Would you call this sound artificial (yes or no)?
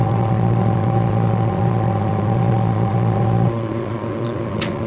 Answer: yes